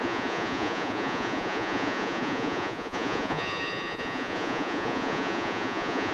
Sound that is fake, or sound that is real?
fake